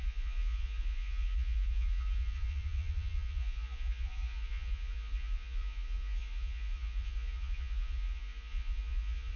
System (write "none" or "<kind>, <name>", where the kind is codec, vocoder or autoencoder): vocoder, Vocos